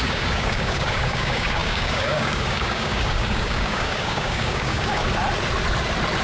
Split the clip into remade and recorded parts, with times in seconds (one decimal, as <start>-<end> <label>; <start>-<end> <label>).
0.0-5.0 remade; 5.0-6.2 recorded